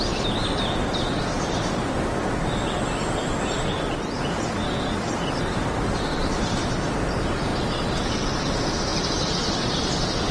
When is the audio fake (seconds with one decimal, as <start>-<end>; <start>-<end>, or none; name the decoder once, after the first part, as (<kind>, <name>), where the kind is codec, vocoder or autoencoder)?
none